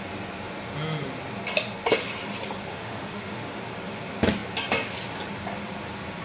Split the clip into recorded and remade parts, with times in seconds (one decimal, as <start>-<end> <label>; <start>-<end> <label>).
0.0-2.7 recorded; 2.7-3.4 remade; 3.4-6.2 recorded